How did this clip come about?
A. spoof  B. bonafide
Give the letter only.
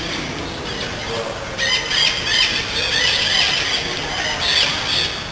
B